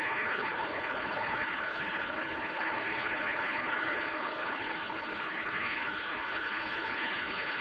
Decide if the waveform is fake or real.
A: fake